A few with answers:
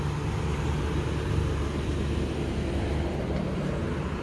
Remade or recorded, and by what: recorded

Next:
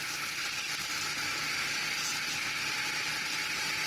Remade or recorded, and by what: recorded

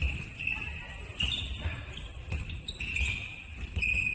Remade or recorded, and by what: recorded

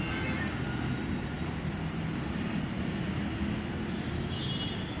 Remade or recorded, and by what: recorded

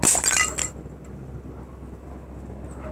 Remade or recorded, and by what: recorded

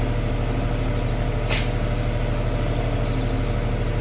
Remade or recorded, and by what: recorded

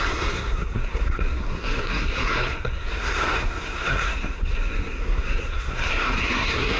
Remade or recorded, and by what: remade, codec, SNAC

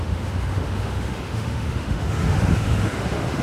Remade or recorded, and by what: remade, autoencoder, DAC-VAE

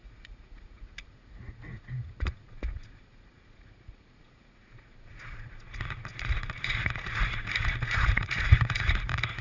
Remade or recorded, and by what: remade, vocoder, Vocos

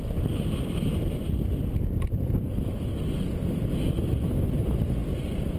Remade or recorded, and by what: recorded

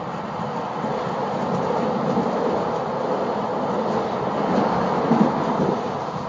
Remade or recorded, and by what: recorded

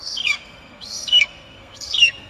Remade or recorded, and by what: remade, codec, SNAC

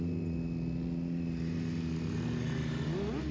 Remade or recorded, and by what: recorded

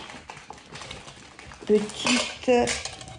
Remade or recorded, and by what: recorded